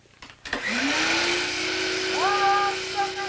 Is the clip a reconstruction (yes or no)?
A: no